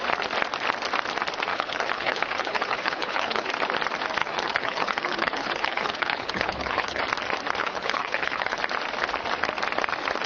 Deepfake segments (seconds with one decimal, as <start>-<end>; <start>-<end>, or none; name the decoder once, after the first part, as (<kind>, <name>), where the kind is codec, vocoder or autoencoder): 1.5-3.5 (codec, HILCodec); 4.2-7.0; 7.6-8.6